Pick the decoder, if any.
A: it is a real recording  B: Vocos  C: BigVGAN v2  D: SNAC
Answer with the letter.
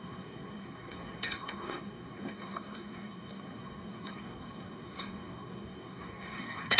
D